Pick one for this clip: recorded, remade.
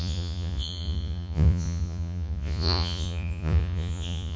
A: remade